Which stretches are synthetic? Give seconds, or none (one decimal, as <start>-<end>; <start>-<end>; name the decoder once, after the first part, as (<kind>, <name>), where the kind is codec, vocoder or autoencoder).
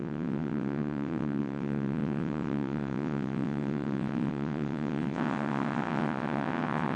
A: 0.0-7.0 (vocoder, WaveNeXt)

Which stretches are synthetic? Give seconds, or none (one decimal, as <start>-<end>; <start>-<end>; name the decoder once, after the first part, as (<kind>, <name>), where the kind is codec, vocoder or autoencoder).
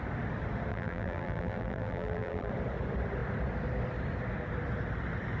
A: 0.7-2.5 (vocoder, BigVGAN v2)